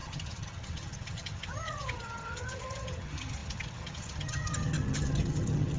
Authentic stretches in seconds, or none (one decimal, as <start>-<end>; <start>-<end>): none